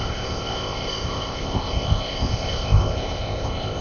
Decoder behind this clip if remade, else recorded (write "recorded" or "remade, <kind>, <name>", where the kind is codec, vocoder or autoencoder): remade, codec, ZipCodec